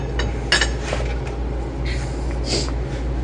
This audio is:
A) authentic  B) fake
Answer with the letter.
A